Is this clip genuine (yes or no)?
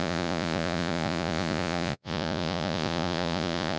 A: no